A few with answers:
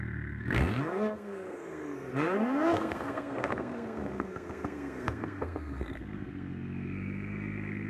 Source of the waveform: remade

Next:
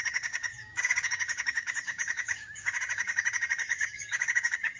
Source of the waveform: remade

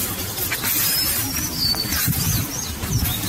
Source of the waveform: recorded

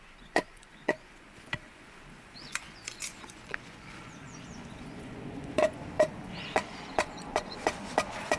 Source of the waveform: remade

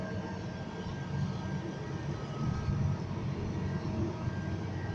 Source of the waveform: recorded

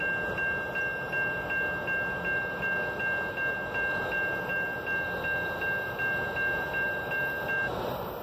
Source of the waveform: recorded